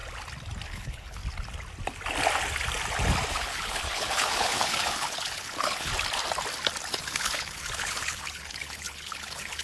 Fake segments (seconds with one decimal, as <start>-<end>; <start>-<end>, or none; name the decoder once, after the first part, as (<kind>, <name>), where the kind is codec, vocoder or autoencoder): 0.7-1.2 (codec, HILCodec); 3.3-5.9; 6.9-9.6